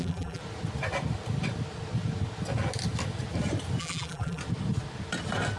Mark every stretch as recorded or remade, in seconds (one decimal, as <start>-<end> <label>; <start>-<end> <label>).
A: 0.0-0.4 remade; 0.4-3.8 recorded; 3.8-4.4 remade; 4.4-5.6 recorded